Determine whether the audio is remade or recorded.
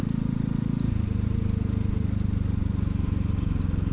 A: recorded